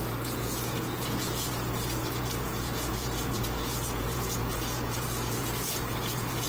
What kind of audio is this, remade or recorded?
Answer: remade